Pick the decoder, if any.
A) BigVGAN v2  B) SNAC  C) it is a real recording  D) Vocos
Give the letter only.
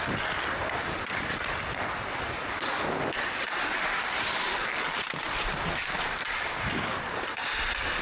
C